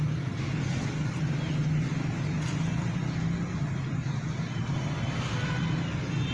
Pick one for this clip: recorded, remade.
recorded